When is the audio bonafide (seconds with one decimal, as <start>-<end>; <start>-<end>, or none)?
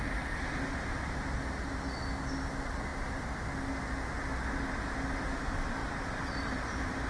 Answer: 0.0-5.8